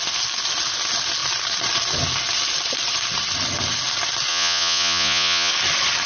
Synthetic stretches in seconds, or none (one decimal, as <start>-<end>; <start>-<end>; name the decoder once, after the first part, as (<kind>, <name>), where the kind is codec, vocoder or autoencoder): 4.3-5.5 (vocoder, Vocos)